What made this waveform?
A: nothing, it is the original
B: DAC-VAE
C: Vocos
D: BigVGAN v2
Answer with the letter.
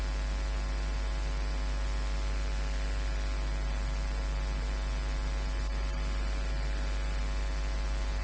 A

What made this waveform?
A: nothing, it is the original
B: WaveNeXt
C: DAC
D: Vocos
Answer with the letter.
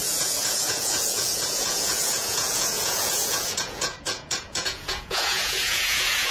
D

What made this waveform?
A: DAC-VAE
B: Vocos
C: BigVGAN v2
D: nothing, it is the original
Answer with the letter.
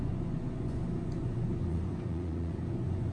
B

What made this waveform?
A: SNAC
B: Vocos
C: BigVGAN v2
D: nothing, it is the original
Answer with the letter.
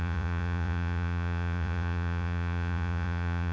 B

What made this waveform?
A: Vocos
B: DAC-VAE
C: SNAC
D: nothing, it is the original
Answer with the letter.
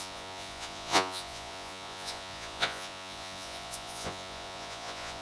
A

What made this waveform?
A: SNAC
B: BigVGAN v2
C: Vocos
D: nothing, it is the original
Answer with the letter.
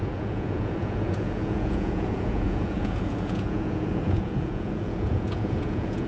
C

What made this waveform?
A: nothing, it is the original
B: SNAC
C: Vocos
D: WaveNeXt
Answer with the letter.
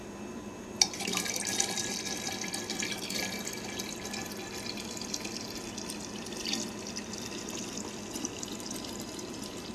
A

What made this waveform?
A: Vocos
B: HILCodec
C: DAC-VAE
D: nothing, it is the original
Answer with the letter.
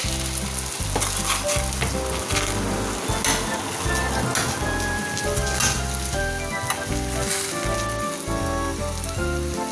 D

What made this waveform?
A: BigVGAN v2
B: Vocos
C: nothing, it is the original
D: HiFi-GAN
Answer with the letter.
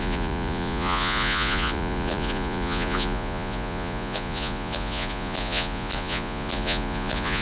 B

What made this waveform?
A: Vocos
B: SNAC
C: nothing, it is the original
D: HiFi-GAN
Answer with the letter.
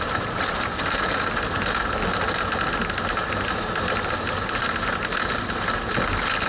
C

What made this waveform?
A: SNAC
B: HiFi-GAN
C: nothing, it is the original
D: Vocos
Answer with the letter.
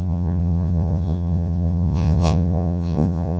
D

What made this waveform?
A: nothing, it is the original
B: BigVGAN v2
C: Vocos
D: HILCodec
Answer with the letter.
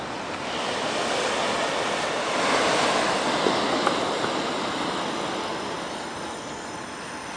A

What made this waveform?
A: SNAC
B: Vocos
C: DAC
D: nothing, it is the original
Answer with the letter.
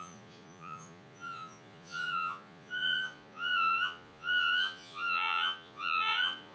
B